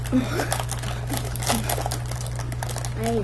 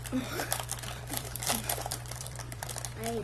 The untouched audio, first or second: first